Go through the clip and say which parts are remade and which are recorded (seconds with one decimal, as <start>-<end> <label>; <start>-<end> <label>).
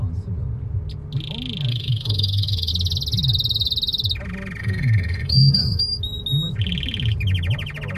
0.0-1.7 recorded; 1.7-2.7 remade; 2.7-4.6 recorded; 4.6-5.8 remade; 5.8-8.0 recorded